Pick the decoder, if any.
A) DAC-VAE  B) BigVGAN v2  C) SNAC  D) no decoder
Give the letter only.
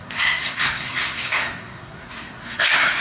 C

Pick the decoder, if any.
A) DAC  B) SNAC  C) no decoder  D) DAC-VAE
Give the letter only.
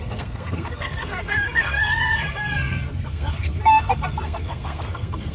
B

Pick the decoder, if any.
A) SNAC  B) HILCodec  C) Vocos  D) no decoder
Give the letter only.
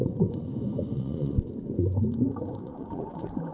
C